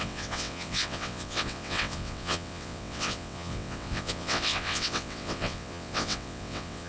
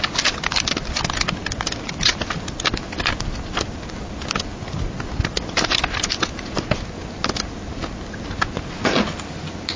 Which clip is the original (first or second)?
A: second